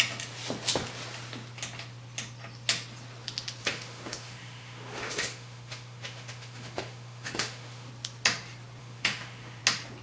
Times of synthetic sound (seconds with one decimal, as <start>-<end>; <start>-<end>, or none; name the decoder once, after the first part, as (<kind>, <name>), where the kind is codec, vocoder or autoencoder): 3.6-7.9 (autoencoder, DAC-VAE); 8.8-9.6